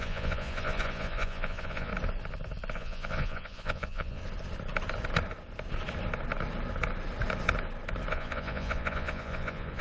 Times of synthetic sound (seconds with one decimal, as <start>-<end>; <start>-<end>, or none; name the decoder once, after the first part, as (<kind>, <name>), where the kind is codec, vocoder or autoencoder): 0.0-1.9 (vocoder, Vocos); 2.7-4.2; 8.1-9.8